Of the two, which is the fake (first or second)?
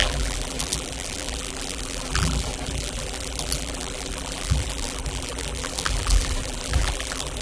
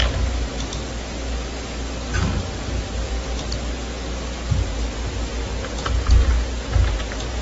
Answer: first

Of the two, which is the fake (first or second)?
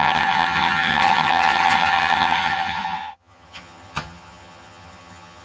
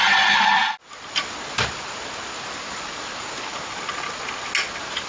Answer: first